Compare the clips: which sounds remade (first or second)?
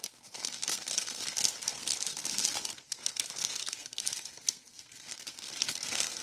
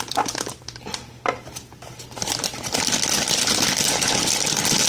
first